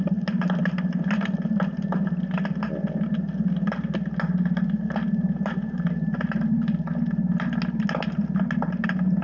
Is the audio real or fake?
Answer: real